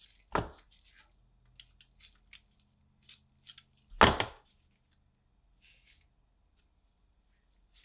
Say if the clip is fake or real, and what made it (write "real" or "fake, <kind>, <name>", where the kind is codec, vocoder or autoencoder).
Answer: real